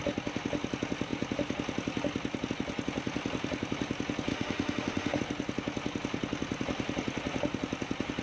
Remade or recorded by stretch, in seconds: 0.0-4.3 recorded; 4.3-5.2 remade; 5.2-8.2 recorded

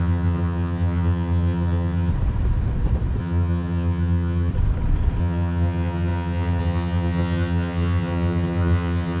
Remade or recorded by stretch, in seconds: 0.0-2.1 remade; 2.1-3.2 recorded; 3.2-4.5 remade; 4.5-5.2 recorded; 5.2-9.2 remade